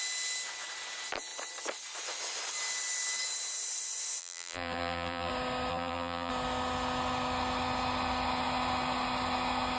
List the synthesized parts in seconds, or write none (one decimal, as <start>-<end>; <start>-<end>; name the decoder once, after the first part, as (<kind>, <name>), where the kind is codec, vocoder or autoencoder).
4.2-5.3 (vocoder, BigVGAN v2); 5.7-6.3

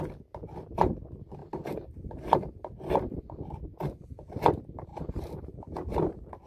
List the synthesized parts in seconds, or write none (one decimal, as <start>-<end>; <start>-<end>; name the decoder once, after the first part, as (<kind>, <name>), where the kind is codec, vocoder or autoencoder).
4.9-5.6 (vocoder, BigVGAN v2)

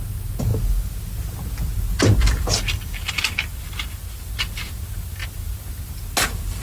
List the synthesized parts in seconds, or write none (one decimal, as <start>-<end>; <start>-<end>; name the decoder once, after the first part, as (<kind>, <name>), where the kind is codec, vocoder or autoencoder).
none

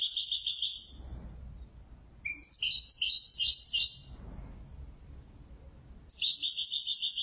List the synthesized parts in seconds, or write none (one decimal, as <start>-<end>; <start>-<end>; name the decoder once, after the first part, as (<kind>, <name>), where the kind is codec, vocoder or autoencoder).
3.3-5.5 (vocoder, BigVGAN v2)

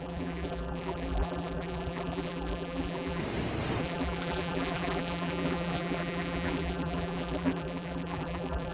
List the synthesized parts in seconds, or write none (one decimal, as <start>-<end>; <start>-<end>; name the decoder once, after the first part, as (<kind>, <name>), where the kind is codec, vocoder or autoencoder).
0.0-3.2 (vocoder, BigVGAN v2); 3.8-8.7

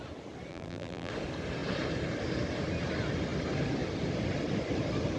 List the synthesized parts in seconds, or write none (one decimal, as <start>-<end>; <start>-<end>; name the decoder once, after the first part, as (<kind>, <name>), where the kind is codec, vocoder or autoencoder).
0.5-1.1 (vocoder, BigVGAN v2)

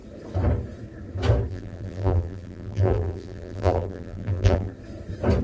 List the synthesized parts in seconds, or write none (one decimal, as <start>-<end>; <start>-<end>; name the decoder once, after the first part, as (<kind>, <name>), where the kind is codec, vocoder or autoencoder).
1.5-4.7 (vocoder, BigVGAN v2)

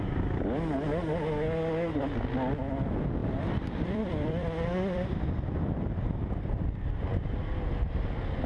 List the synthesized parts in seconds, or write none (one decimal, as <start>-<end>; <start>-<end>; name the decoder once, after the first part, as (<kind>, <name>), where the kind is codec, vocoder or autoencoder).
3.2-6.3 (vocoder, BigVGAN v2)